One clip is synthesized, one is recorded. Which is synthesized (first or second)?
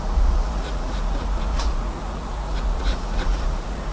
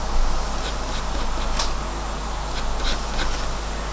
first